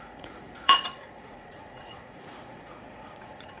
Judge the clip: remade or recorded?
remade